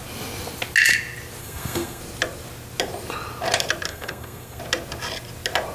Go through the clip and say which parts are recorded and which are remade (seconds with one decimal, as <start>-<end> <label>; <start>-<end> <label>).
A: 0.0-1.4 recorded; 1.4-2.0 remade; 2.0-3.9 recorded; 3.9-4.6 remade; 4.6-5.7 recorded